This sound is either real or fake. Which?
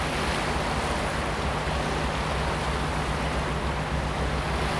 real